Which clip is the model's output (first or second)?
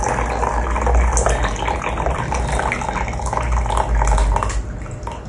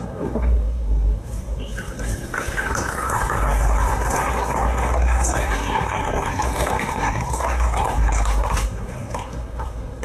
second